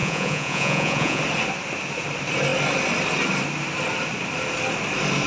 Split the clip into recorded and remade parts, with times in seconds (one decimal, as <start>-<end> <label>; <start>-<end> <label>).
0.0-1.2 remade; 1.2-5.3 recorded